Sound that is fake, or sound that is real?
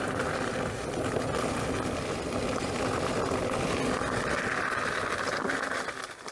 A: real